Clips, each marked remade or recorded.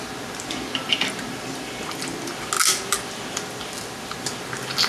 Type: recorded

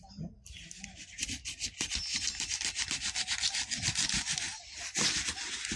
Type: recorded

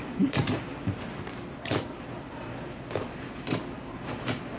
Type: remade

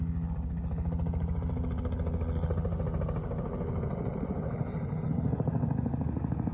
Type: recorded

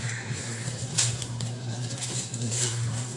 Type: remade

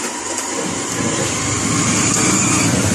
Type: recorded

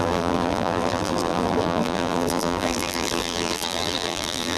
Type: remade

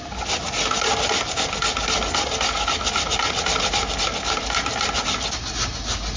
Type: recorded